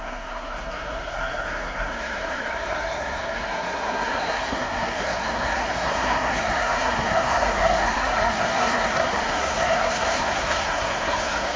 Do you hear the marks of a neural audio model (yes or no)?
yes